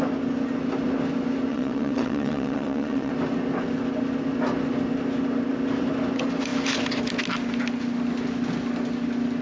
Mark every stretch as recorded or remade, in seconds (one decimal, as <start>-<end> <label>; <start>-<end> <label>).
0.0-1.5 recorded; 1.5-3.1 remade; 3.1-9.4 recorded